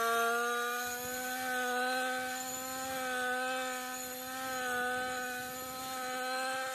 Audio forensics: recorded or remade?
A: recorded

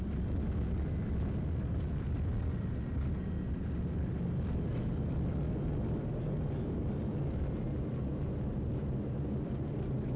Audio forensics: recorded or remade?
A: recorded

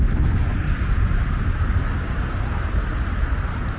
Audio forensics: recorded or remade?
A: recorded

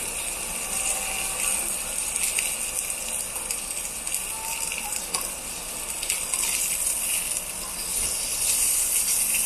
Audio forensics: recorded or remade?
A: recorded